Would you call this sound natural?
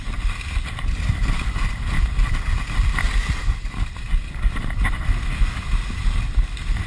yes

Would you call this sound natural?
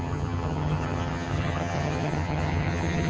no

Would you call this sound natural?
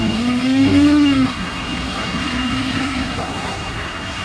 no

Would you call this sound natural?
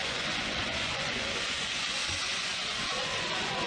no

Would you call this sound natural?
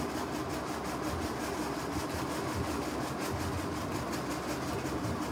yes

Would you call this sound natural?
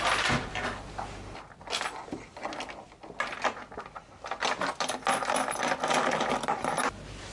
yes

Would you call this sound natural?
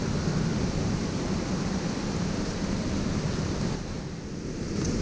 yes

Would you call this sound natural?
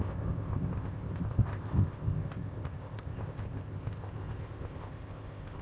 no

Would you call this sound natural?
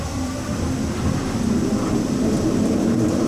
no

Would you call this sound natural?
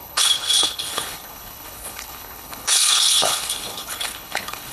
no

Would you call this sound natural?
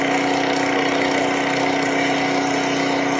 yes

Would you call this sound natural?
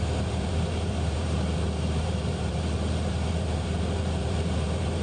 no